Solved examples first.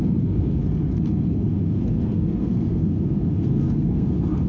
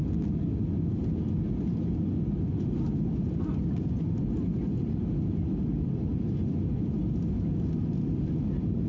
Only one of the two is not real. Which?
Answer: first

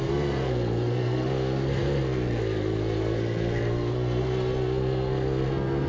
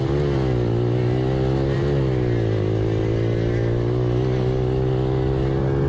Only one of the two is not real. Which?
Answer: first